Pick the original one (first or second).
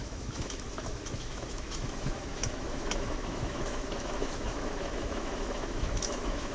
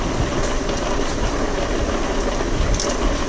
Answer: second